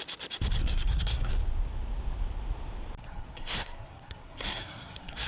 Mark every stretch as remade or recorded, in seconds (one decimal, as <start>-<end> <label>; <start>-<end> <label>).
0.0-0.6 recorded; 0.6-1.3 remade; 1.3-3.0 recorded; 3.0-5.3 remade